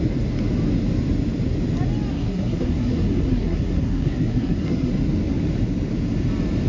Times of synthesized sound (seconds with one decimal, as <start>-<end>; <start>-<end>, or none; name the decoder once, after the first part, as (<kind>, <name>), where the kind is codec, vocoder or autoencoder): 2.1-4.9 (codec, SNAC)